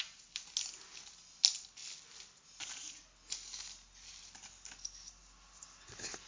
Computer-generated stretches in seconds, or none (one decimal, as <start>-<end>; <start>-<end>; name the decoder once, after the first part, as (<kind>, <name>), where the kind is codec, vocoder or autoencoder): none